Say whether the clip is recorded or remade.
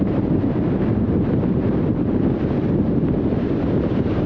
remade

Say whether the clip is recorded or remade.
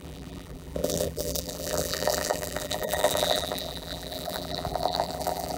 remade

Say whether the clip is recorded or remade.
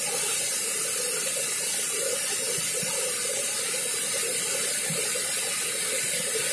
recorded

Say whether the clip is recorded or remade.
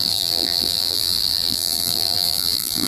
remade